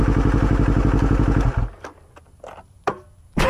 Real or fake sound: real